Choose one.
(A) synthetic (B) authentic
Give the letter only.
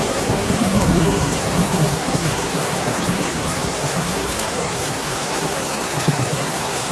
A